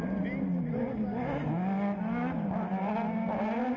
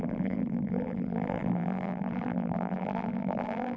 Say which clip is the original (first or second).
first